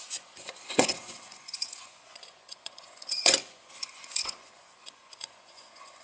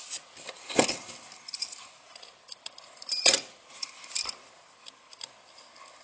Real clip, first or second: second